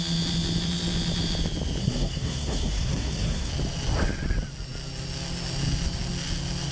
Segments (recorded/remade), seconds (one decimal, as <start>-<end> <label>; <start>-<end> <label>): 0.0-1.8 recorded; 1.8-3.5 remade; 3.5-6.7 recorded